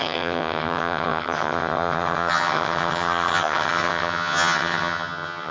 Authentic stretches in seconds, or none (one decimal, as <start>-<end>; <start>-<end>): none